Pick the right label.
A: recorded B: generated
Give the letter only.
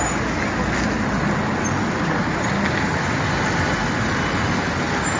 A